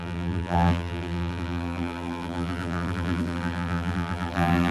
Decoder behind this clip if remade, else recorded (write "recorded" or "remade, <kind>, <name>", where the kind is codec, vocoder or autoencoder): remade, vocoder, BigVGAN v2